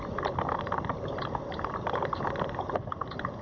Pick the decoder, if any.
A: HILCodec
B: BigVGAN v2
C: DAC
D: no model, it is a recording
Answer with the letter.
D